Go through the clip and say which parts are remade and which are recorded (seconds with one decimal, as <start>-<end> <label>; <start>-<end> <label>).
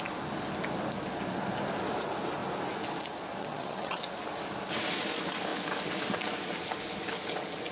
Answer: 0.0-3.4 recorded; 3.4-4.0 remade; 4.0-7.7 recorded